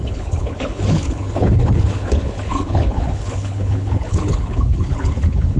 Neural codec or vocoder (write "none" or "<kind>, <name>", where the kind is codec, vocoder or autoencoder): codec, HILCodec